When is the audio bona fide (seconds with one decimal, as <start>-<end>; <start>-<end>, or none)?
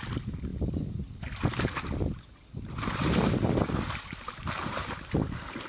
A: 0.0-5.7